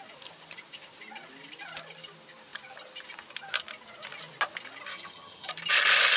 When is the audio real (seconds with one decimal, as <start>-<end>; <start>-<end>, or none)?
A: 0.0-4.9; 5.5-6.2